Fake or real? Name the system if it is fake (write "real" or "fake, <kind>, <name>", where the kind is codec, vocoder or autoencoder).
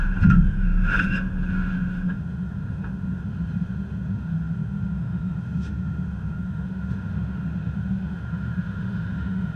fake, autoencoder, DAC-VAE